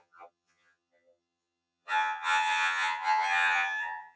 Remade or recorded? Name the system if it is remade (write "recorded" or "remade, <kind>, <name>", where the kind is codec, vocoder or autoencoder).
remade, vocoder, HiFi-GAN